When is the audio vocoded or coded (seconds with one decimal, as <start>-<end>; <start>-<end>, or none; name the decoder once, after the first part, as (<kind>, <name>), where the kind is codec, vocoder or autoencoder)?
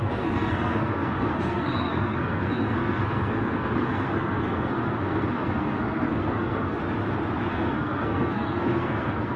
0.0-6.8 (codec, SNAC); 7.5-9.4